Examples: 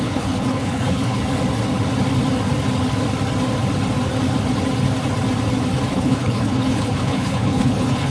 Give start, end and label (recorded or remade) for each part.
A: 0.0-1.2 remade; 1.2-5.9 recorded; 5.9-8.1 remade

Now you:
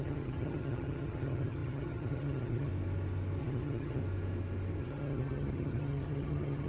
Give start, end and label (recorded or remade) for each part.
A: 0.0-2.7 remade; 2.7-3.4 recorded; 3.4-4.0 remade; 4.0-4.8 recorded; 4.8-6.7 remade

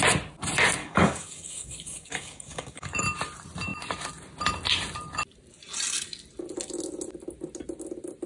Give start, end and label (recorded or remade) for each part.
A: 0.0-0.8 recorded; 0.8-3.0 remade; 3.0-8.3 recorded

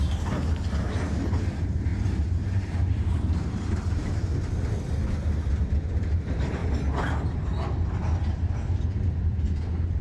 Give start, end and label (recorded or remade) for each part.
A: 0.0-4.3 remade; 4.3-5.2 recorded; 5.2-6.6 remade; 6.6-9.3 recorded; 9.3-10.0 remade

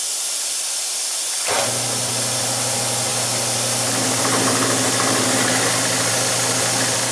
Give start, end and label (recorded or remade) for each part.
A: 0.0-7.1 recorded

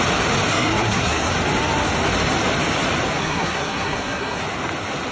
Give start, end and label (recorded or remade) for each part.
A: 0.0-0.5 recorded; 0.5-1.3 remade; 1.3-3.2 recorded; 3.2-4.4 remade; 4.4-5.1 recorded